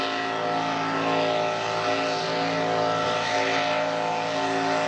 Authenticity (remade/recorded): recorded